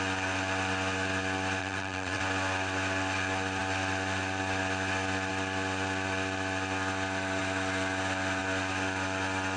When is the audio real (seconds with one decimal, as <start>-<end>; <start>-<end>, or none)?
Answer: 0.0-1.6; 2.2-9.6

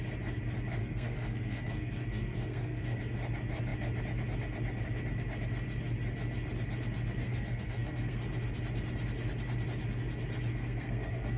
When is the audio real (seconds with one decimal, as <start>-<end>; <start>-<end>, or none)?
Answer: 0.0-0.8; 3.0-7.2; 8.2-10.5

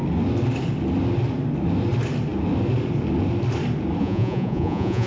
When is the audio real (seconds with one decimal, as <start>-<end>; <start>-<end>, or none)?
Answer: 0.0-4.0

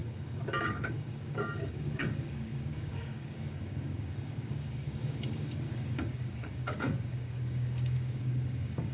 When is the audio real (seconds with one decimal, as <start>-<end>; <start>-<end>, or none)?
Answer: none